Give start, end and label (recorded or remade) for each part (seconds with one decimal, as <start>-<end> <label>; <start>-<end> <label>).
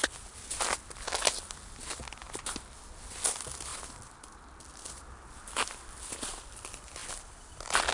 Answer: 0.0-7.9 recorded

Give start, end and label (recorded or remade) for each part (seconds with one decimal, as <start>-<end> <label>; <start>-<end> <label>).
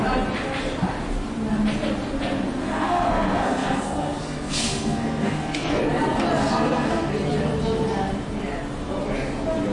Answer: 0.0-2.6 recorded; 2.6-5.8 remade; 5.8-6.4 recorded; 6.4-7.1 remade; 7.1-9.7 recorded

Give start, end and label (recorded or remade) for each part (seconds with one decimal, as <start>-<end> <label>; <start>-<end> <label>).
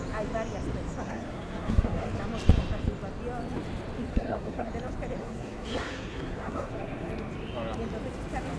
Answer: 0.0-1.0 recorded; 1.0-2.1 remade; 2.1-4.1 recorded; 4.1-4.7 remade; 4.7-5.2 recorded; 5.2-7.1 remade; 7.1-8.6 recorded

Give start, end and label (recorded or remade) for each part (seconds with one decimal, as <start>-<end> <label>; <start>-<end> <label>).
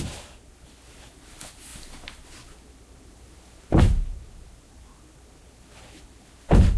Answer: 0.0-6.8 recorded